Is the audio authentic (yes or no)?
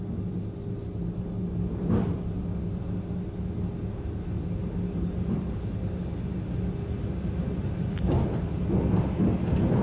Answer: yes